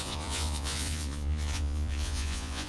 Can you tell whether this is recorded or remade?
remade